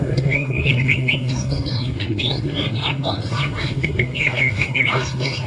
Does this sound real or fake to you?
fake